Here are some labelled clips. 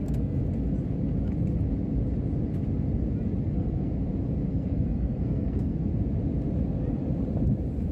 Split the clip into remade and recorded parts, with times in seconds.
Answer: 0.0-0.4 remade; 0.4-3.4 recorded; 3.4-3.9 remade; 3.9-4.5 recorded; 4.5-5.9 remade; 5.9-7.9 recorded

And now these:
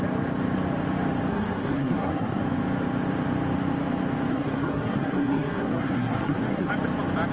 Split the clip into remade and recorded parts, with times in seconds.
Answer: 0.0-1.3 recorded; 1.3-2.4 remade; 2.4-4.3 recorded; 4.3-6.7 remade; 6.7-7.3 recorded

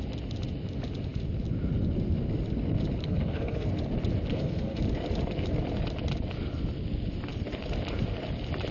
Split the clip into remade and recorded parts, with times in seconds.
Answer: 0.0-3.0 recorded; 3.0-3.7 remade; 3.7-4.3 recorded; 4.3-4.8 remade; 4.8-8.7 recorded

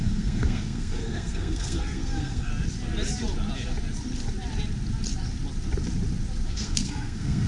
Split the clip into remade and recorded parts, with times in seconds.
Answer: 0.0-2.5 remade; 2.5-6.5 recorded; 6.5-7.5 remade

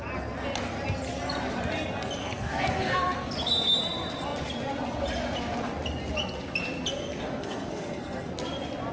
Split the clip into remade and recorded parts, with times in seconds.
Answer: 0.0-2.2 recorded; 2.2-3.3 remade; 3.3-7.4 recorded; 7.4-8.3 remade; 8.3-8.9 recorded

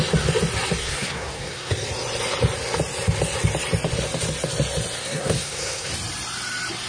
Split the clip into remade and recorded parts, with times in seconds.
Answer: 0.0-0.8 recorded; 0.8-1.7 remade; 1.7-5.0 recorded; 5.0-5.9 remade; 5.9-6.9 recorded